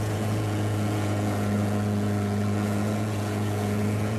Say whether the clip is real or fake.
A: fake